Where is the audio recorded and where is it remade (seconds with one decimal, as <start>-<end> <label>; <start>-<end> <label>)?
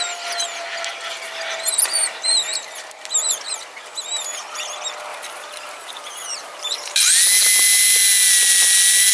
0.0-5.1 recorded; 5.1-7.1 remade; 7.1-9.1 recorded